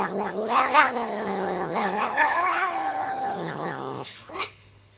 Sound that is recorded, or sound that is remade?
remade